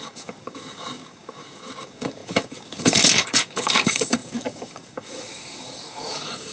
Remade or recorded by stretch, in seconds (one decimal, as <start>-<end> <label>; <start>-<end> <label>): 0.0-6.5 remade